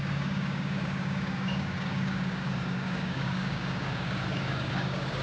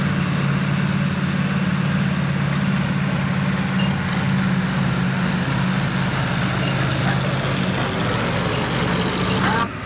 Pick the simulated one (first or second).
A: first